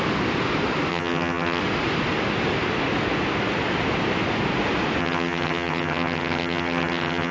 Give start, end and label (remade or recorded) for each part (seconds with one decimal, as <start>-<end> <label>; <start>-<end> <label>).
0.0-0.9 recorded; 0.9-1.6 remade; 1.6-5.0 recorded; 5.0-7.3 remade